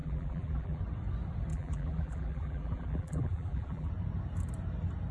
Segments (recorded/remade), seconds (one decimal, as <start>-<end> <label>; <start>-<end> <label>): 0.0-0.8 remade; 0.8-1.5 recorded; 1.5-3.9 remade; 3.9-5.1 recorded